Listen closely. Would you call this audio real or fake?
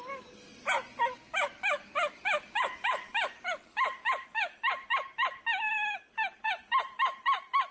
real